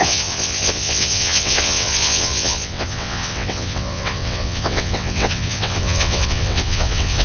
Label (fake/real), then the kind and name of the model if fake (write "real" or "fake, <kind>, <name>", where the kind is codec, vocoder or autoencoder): fake, vocoder, WaveNeXt